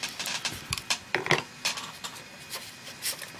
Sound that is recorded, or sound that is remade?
remade